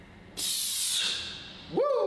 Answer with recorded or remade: recorded